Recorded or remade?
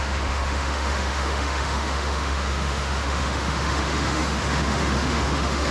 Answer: remade